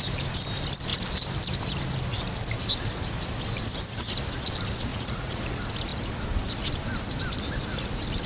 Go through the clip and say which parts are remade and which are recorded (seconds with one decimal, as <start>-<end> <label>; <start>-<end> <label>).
0.0-4.9 recorded; 4.9-5.5 remade; 5.5-8.3 recorded